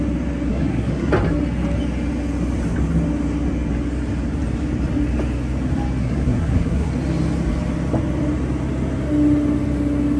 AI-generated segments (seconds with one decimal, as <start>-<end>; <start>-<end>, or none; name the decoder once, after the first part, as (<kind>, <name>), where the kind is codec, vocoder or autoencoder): 0.5-1.1 (codec, SNAC); 6.0-6.9